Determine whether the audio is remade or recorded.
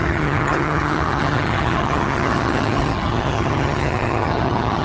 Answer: remade